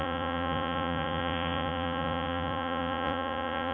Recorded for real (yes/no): no